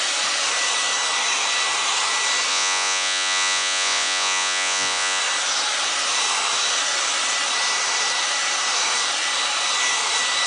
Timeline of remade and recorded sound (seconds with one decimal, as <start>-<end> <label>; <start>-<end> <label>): 0.0-2.5 recorded; 2.5-5.2 remade; 5.2-10.5 recorded